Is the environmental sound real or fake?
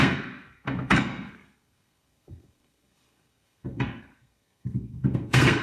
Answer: fake